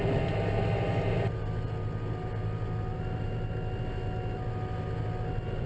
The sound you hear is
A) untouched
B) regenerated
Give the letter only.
A